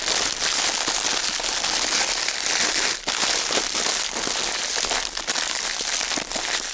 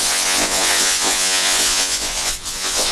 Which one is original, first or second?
first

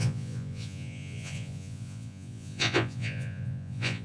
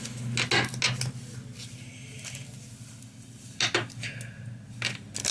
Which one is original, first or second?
second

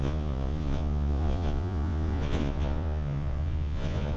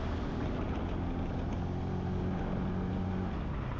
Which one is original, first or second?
second